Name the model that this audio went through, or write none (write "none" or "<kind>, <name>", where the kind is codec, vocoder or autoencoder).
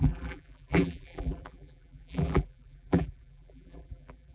vocoder, BigVGAN v2